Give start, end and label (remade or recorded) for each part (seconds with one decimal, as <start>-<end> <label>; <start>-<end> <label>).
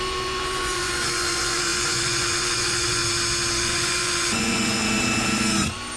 0.0-3.0 remade; 3.0-3.6 recorded; 3.6-4.8 remade; 4.8-6.0 recorded